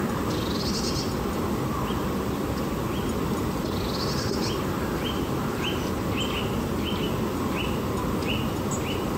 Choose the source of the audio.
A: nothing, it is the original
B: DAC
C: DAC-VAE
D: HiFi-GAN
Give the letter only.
A